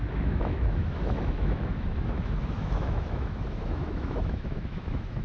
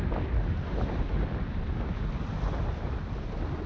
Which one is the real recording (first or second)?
second